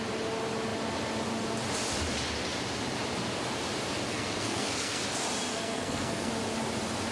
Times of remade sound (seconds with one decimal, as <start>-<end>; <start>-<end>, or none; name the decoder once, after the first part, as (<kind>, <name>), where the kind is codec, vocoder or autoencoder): 4.1-5.0 (codec, SNAC); 5.5-6.3